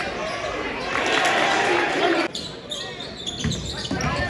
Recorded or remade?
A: recorded